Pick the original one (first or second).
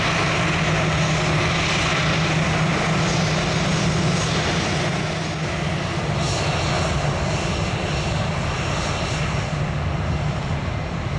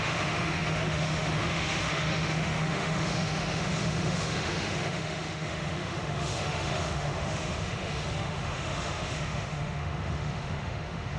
first